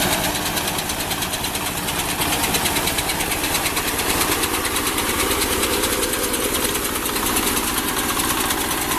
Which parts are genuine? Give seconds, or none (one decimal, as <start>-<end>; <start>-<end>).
0.0-3.4; 5.9-9.0

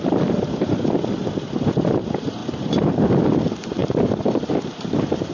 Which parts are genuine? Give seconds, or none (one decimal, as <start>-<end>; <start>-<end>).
1.0-1.5

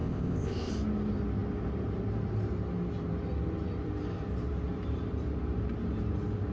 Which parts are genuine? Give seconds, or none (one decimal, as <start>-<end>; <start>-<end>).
0.7-6.5

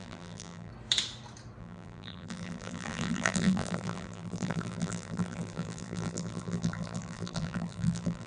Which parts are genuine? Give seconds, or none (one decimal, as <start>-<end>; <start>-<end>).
0.7-1.6

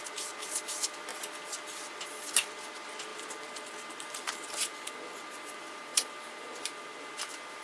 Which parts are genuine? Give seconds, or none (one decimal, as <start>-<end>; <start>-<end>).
0.0-7.6

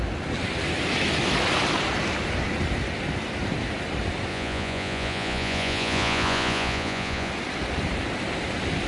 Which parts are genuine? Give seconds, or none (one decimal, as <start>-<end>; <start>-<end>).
0.0-4.3; 7.3-8.9